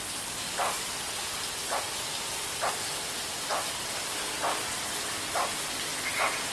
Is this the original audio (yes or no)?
yes